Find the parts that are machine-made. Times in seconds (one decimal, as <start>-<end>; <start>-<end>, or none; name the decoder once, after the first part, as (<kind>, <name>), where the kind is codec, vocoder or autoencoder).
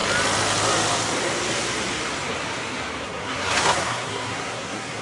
3.0-5.0 (codec, SNAC)